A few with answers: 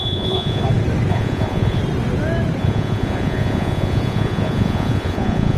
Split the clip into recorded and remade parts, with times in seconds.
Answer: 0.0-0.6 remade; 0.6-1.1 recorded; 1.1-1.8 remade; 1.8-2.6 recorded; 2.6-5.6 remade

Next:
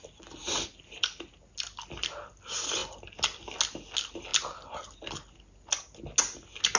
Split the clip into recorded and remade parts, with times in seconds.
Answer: 0.0-6.8 recorded

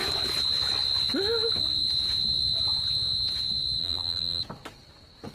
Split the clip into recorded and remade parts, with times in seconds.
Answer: 0.0-3.8 recorded; 3.8-4.4 remade; 4.4-5.3 recorded

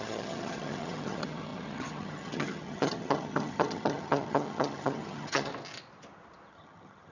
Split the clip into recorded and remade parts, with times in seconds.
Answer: 0.0-5.5 remade; 5.5-6.5 recorded; 6.5-7.1 remade

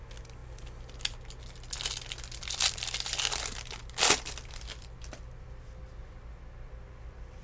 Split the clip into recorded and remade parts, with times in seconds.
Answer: 0.0-7.4 recorded

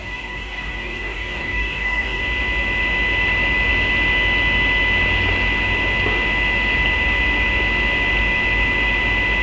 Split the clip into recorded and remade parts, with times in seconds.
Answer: 0.0-2.2 remade; 2.2-9.4 recorded

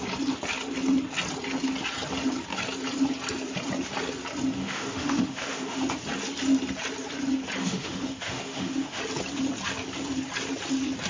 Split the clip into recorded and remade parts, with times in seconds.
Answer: 0.0-4.6 recorded; 4.6-5.8 remade; 5.8-7.6 recorded; 7.6-9.0 remade; 9.0-11.1 recorded